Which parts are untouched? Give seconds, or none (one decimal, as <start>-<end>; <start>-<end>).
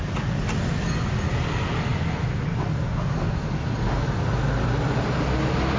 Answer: 0.0-5.8